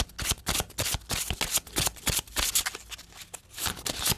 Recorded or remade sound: recorded